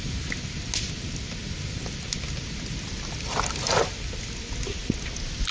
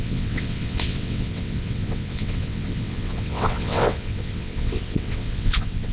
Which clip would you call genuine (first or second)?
first